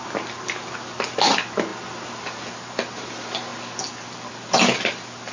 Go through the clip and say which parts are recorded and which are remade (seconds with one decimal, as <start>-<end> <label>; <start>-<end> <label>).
0.0-5.3 recorded